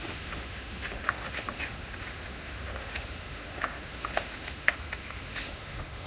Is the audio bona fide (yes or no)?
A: no